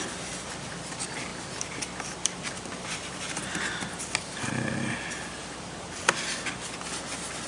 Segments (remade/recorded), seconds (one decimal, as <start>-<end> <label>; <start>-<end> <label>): 0.0-7.5 recorded